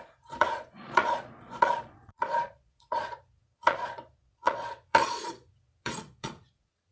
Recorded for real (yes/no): no